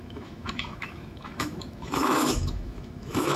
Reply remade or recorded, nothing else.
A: remade